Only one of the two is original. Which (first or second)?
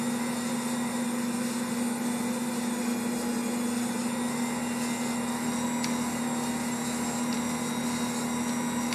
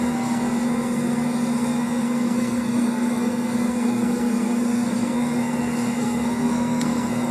first